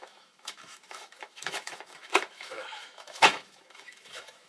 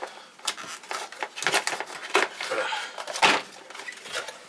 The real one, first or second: second